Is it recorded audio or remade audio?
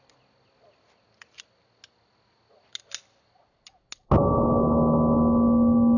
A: recorded